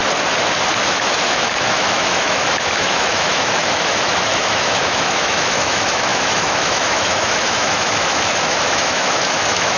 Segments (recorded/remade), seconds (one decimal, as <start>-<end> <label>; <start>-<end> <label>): 0.0-0.8 recorded; 0.8-9.8 remade